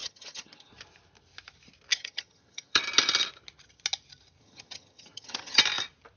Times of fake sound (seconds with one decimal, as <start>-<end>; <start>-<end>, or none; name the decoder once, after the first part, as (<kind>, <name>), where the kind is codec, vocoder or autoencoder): 0.0-0.7 (vocoder, HiFi-GAN); 1.9-2.8; 4.4-5.6